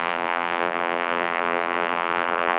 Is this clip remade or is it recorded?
remade